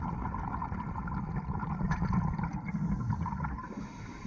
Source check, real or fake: real